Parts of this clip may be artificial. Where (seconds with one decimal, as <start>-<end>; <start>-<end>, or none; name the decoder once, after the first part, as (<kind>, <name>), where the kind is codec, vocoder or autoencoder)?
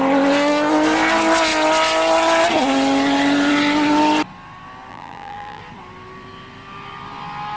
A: 4.9-5.6 (vocoder, BigVGAN v2)